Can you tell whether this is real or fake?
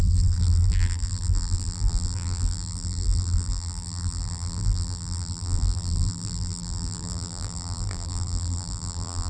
fake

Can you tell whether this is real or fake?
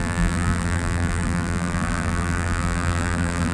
fake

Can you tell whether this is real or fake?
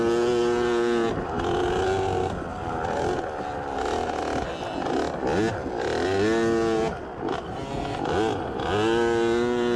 real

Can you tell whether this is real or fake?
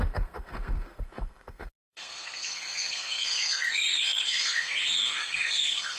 fake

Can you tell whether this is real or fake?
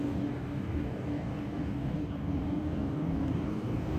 fake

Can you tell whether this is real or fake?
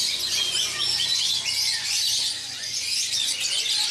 fake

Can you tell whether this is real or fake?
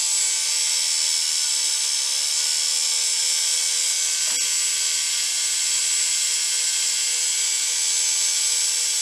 real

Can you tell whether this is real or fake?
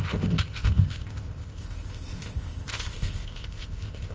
fake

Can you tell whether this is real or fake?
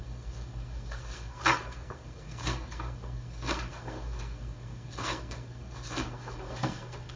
fake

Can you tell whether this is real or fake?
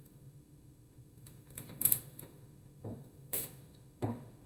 fake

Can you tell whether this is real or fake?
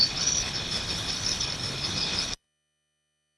fake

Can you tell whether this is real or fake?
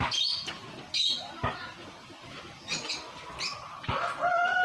real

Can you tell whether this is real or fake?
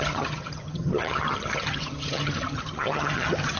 fake